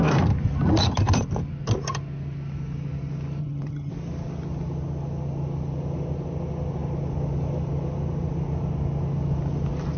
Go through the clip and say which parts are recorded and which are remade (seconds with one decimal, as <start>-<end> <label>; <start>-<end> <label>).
0.0-3.4 recorded; 3.4-3.9 remade; 3.9-10.0 recorded